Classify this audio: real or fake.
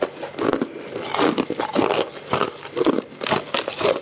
real